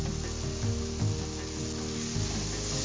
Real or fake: real